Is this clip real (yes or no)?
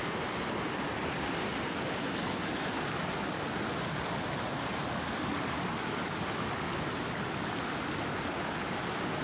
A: yes